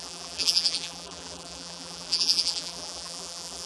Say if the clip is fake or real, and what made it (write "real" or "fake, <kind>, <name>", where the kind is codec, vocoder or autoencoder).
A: fake, vocoder, BigVGAN v2